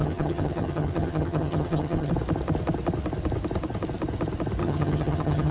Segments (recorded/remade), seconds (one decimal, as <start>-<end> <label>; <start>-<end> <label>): 0.0-2.1 remade; 2.1-4.6 recorded; 4.6-5.5 remade